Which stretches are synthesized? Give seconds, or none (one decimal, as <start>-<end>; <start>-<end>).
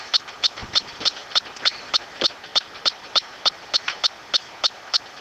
0.6-1.9; 2.5-3.7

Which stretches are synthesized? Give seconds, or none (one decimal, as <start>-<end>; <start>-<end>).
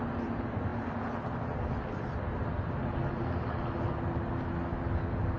none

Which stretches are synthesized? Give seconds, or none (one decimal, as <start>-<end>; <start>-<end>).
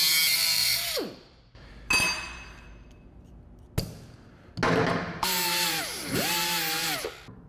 0.6-1.7; 4.9-6.3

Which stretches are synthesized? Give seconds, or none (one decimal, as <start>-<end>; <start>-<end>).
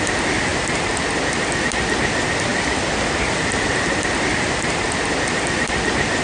0.5-1.6; 2.5-6.2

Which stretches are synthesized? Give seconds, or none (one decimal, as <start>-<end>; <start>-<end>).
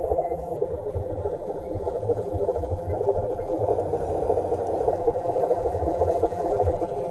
0.0-3.7; 4.9-7.1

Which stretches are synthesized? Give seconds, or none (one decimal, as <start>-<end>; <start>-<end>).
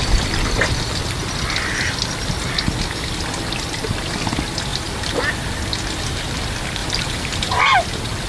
4.7-5.2; 6.8-7.6